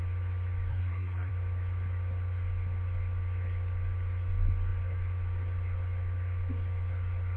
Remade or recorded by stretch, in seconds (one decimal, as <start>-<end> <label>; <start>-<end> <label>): 0.0-0.7 recorded; 0.7-1.3 remade; 1.3-7.4 recorded